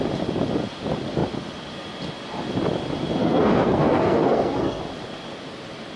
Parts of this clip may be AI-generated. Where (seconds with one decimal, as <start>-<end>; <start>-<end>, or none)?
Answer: 3.2-4.8